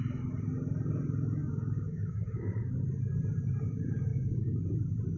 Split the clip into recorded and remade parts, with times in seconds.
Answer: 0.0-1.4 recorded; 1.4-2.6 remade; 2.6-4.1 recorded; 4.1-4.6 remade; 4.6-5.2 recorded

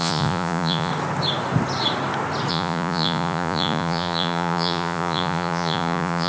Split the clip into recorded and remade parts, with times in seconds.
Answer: 0.0-0.9 remade; 0.9-2.5 recorded; 2.5-6.3 remade

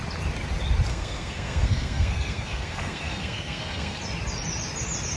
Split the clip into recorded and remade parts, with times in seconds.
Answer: 0.0-0.9 recorded; 0.9-4.0 remade; 4.0-5.2 recorded

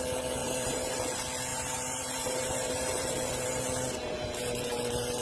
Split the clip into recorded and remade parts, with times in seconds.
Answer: 0.0-0.4 recorded; 0.4-0.9 remade; 0.9-1.5 recorded; 1.5-3.3 remade; 3.3-5.2 recorded

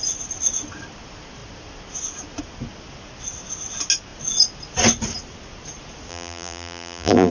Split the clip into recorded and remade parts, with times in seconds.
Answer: 0.0-6.1 recorded; 6.1-7.3 remade

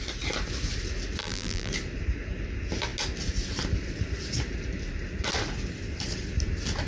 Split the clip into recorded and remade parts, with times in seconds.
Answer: 0.0-1.2 recorded; 1.2-1.7 remade; 1.7-6.9 recorded

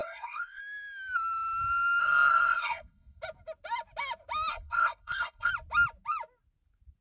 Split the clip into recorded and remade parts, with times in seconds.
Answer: 0.0-0.6 remade; 0.6-2.0 recorded; 2.0-3.2 remade; 3.2-4.5 recorded; 4.5-5.5 remade; 5.5-7.0 recorded

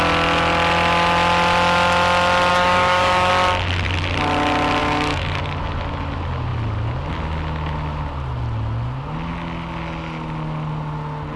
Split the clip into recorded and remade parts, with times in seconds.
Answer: 0.0-2.5 recorded; 2.5-3.3 remade; 3.3-4.8 recorded; 4.8-5.4 remade; 5.4-11.4 recorded